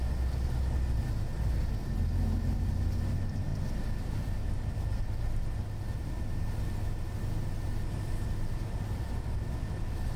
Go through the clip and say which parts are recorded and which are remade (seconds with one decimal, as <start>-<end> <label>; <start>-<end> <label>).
0.0-10.2 recorded